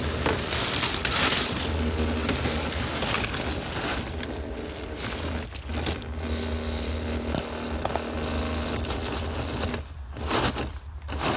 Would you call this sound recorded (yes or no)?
yes